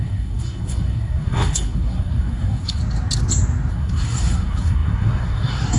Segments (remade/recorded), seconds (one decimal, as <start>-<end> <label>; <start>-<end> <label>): 0.0-2.8 remade; 2.8-3.7 recorded; 3.7-5.8 remade